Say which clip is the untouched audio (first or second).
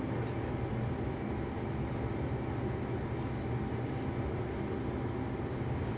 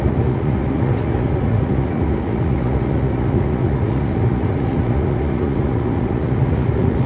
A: first